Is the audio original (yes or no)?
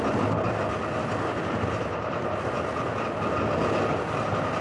yes